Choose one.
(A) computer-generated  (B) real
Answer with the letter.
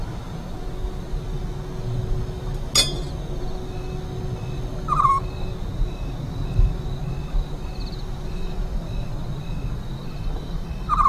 B